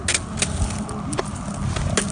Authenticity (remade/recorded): recorded